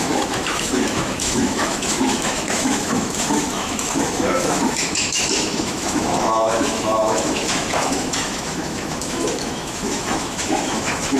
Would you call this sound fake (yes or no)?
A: yes